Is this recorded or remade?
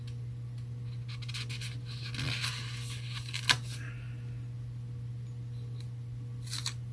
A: recorded